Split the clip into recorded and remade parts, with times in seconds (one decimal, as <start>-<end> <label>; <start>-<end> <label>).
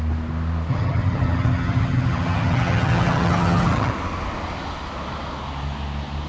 0.0-0.7 recorded; 0.7-3.9 remade; 3.9-6.3 recorded